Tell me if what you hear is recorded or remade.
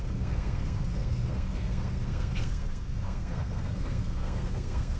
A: remade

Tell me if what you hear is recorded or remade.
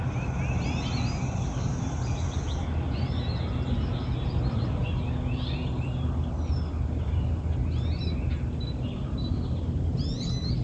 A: recorded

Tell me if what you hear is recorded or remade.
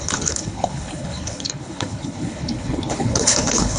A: remade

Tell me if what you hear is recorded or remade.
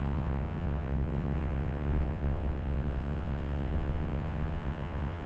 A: remade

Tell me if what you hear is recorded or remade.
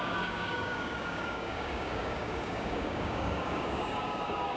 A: remade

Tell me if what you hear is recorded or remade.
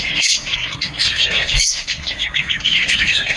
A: remade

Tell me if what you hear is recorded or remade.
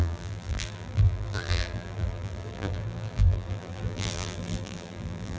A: remade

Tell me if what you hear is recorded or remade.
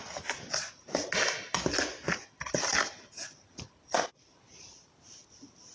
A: recorded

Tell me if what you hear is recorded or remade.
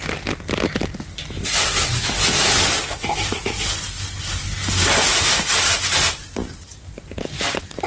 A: recorded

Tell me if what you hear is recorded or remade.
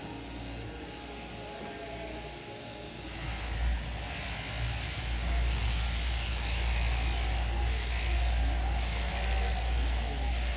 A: recorded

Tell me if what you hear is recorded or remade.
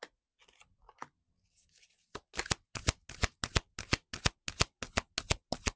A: recorded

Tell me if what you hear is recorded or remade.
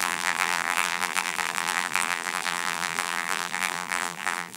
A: remade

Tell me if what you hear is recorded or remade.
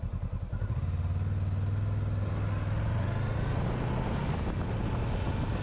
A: recorded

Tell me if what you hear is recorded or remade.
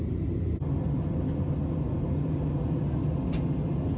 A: recorded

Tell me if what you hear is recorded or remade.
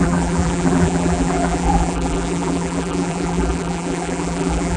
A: remade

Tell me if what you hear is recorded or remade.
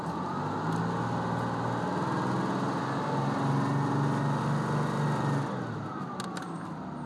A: recorded